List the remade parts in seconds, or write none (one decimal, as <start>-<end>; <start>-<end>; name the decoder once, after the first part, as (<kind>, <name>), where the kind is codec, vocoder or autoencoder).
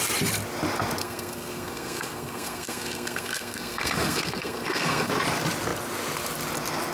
1.0-5.1 (codec, SNAC)